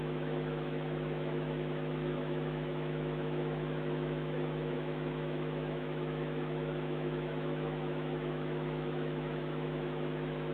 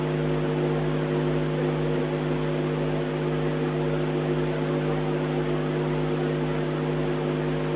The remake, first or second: first